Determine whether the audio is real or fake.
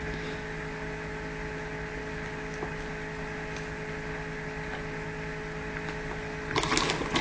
real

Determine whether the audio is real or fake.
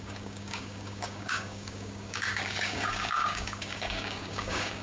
fake